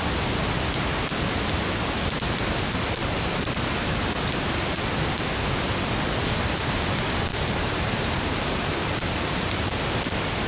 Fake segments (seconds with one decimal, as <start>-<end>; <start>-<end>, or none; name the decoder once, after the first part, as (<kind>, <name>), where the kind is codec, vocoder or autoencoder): 3.0-3.6 (vocoder, BigVGAN v2); 7.3-9.7